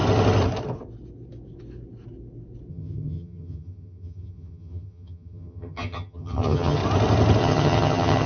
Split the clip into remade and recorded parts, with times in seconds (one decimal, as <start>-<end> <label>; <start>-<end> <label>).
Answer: 0.0-2.7 recorded; 2.7-6.8 remade; 6.8-7.4 recorded; 7.4-8.3 remade